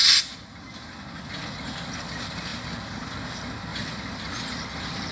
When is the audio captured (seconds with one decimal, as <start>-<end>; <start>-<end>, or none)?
0.0-3.7